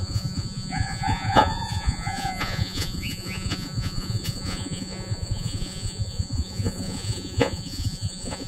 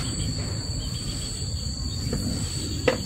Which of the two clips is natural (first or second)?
second